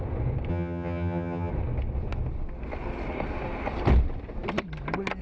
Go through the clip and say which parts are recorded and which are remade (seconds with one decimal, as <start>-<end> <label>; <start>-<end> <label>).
0.0-0.5 recorded; 0.5-1.5 remade; 1.5-5.2 recorded